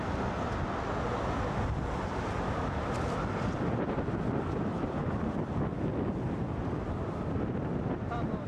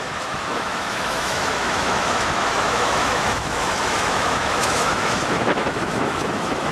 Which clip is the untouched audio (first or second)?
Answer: first